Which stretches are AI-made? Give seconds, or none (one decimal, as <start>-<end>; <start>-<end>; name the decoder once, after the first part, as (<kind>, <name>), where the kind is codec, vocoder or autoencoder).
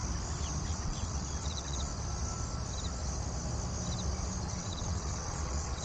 0.7-1.9 (vocoder, WaveNeXt); 4.5-5.8